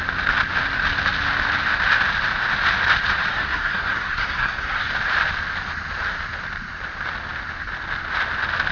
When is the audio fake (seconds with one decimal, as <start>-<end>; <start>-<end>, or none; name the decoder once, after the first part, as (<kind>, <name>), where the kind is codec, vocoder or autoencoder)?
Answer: 3.3-4.9 (codec, SNAC)